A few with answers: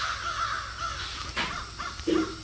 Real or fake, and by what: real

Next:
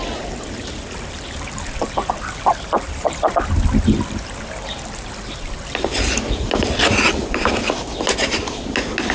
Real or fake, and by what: real